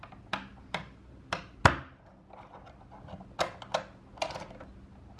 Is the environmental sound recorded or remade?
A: recorded